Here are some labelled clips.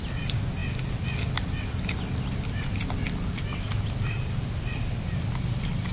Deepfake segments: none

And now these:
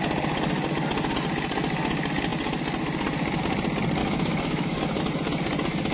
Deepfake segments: 4.0-5.0 (autoencoder, DAC-VAE)